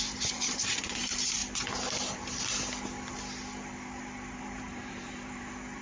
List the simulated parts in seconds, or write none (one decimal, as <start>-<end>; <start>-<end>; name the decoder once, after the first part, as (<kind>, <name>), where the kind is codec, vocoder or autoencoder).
0.0-1.4 (vocoder, BigVGAN v2); 4.4-5.8